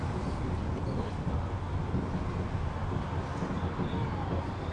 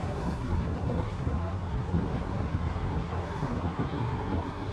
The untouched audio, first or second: first